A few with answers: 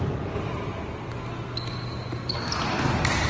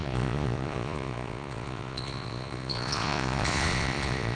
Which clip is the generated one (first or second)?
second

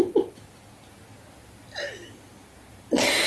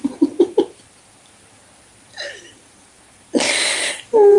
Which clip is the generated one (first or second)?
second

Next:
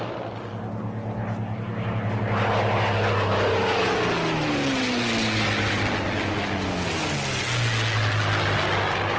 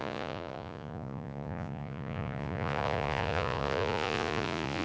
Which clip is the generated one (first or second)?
second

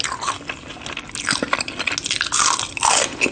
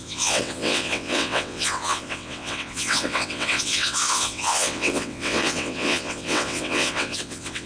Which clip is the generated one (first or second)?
second